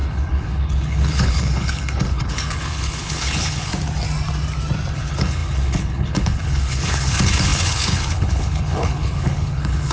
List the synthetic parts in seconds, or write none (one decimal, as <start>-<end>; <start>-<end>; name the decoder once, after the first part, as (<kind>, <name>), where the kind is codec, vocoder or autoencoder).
0.0-3.7 (codec, HILCodec); 4.9-9.9